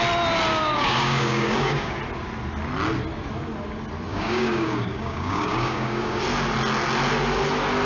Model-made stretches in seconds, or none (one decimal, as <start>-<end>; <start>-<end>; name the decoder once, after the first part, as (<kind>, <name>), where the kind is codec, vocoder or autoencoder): 0.5-2.0 (codec, DAC); 4.1-6.2